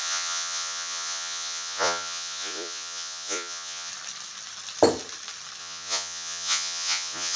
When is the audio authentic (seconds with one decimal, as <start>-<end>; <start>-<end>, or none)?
3.9-5.6